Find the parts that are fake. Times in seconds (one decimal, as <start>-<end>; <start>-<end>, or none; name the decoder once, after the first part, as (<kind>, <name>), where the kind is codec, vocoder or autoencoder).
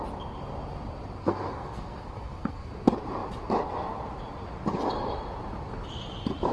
1.2-2.7 (codec, SNAC)